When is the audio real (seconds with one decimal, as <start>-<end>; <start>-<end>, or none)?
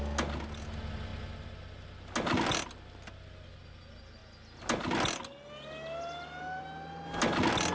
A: 0.0-7.7